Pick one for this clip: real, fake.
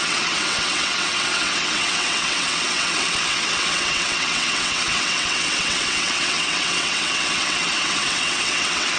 fake